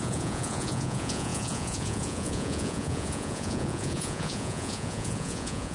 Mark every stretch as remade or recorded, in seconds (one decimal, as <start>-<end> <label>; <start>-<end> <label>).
0.0-5.7 remade

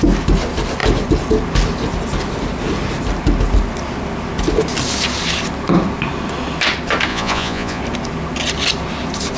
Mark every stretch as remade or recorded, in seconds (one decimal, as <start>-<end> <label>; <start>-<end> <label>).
0.0-7.1 recorded; 7.1-7.8 remade; 7.8-9.4 recorded

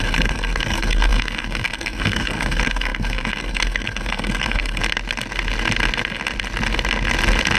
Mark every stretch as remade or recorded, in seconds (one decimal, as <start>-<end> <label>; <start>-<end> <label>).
0.0-4.8 remade; 4.8-7.6 recorded

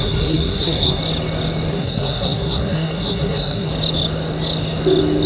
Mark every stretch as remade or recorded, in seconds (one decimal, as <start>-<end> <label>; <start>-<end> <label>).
0.0-1.0 remade; 1.0-1.7 recorded; 1.7-3.7 remade; 3.7-5.3 recorded